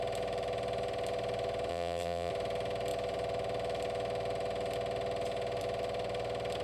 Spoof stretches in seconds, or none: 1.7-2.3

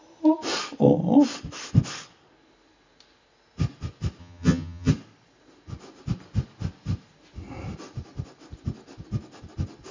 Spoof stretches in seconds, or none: 4.2-4.9

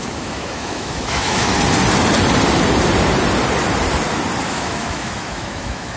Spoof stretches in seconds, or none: 0.0-1.5; 4.4-6.0

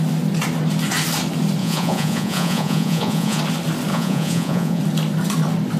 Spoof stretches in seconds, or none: 1.6-3.4; 3.9-4.8

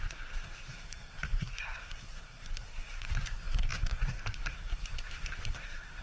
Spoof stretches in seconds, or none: 0.0-6.0

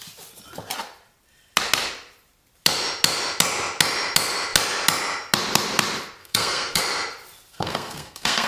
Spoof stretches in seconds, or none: 6.2-6.8; 7.5-8.5

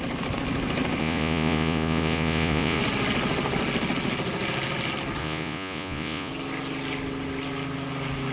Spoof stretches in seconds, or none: 1.0-2.8; 5.2-6.3